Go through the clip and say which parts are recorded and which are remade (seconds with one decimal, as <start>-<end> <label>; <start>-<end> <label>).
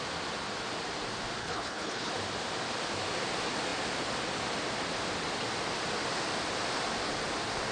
0.0-1.4 recorded; 1.4-2.1 remade; 2.1-7.7 recorded